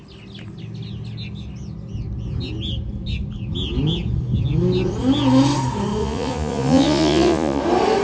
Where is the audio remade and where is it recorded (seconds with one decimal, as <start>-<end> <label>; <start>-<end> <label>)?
0.0-6.0 recorded; 6.0-7.6 remade; 7.6-8.0 recorded